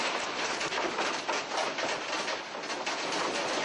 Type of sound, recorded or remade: recorded